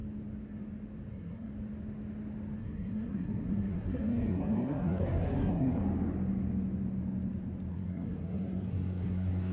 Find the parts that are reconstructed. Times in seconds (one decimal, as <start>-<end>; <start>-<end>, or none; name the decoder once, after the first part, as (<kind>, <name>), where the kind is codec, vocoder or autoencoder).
1.1-1.5 (codec, SNAC); 2.6-5.8; 7.7-9.5